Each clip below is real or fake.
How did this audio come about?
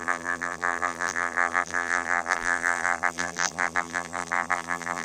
fake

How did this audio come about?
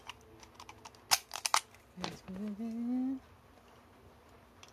real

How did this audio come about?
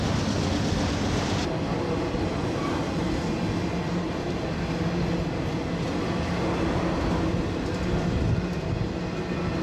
real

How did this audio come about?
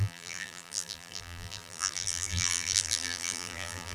fake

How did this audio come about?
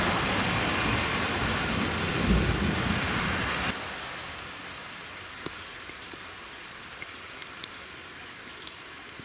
real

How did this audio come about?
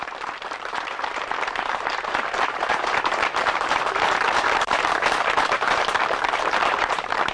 fake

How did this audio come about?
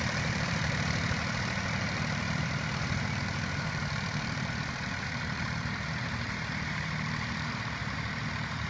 fake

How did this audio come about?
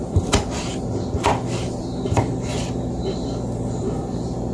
fake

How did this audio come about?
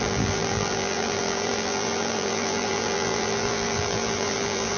fake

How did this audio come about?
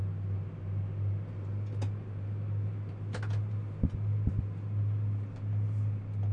real